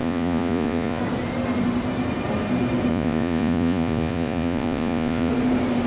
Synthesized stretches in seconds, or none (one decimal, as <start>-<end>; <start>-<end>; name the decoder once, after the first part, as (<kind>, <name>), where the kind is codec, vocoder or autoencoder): 0.0-1.0 (vocoder, Vocos); 2.9-5.3